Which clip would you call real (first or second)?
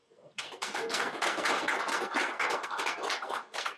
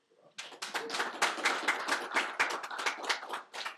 second